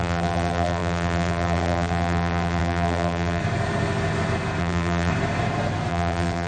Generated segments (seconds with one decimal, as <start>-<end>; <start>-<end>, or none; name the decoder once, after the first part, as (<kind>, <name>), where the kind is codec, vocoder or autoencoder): 0.0-3.4 (vocoder, BigVGAN v2); 4.6-5.1; 5.9-6.5